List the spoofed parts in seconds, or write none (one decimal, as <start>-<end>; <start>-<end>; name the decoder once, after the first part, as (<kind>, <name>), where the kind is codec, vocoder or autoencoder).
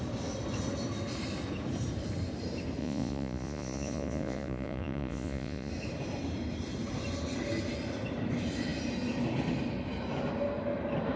2.8-5.7 (vocoder, Vocos)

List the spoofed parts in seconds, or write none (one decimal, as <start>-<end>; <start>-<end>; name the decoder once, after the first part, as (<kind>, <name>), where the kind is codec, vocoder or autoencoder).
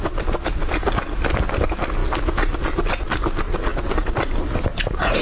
none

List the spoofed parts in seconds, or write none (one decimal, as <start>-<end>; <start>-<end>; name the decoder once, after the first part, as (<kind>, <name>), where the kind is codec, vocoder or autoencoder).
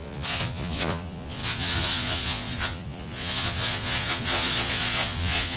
0.0-5.6 (vocoder, Vocos)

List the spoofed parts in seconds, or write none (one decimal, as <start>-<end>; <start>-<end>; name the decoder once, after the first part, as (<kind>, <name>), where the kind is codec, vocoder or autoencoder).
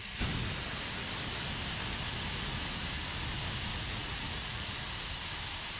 3.7-4.8 (vocoder, Vocos)